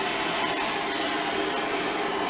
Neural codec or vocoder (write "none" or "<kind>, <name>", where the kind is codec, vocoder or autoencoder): none